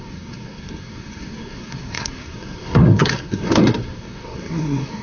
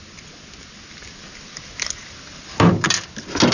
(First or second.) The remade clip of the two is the first